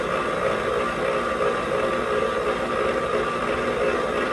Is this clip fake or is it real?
real